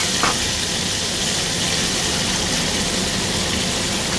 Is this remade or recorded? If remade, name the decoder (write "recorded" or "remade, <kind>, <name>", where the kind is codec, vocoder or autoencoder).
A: recorded